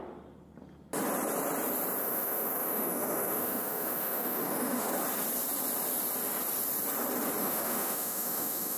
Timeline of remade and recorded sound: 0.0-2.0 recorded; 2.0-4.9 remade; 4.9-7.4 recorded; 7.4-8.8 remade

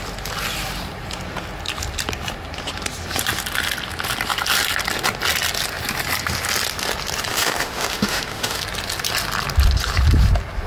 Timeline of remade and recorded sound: 0.0-7.3 recorded; 7.3-8.6 remade; 8.6-10.7 recorded

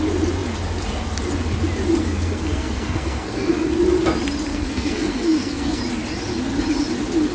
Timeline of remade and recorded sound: 0.0-2.0 recorded; 2.0-3.7 remade; 3.7-4.5 recorded; 4.5-5.8 remade; 5.8-7.3 recorded

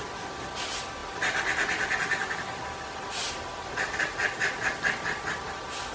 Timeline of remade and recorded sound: 0.0-5.9 recorded

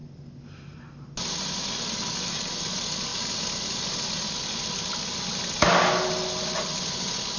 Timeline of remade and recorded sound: 0.0-7.4 recorded